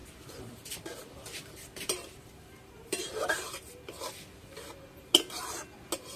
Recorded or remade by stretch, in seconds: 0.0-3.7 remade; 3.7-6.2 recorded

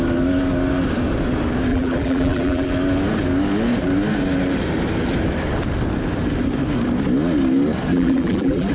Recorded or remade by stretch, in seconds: 0.0-1.7 recorded; 1.7-2.7 remade; 2.7-7.9 recorded; 7.9-8.7 remade

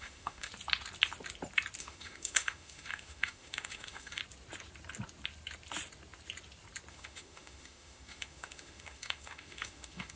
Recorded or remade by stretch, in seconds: 0.0-0.5 remade; 0.5-1.8 recorded; 1.8-4.2 remade; 4.2-6.9 recorded; 6.9-10.2 remade

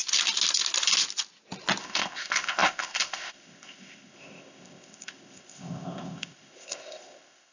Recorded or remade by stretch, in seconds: 0.0-1.8 recorded; 1.8-7.5 remade